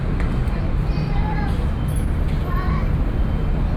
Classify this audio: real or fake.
real